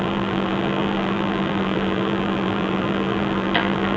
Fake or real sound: fake